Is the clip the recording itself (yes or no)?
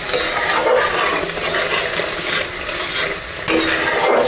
yes